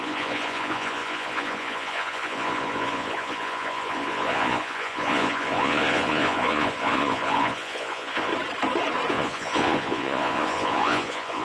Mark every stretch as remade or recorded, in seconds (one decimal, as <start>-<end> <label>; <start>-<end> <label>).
0.0-8.3 remade; 8.3-9.1 recorded; 9.1-11.4 remade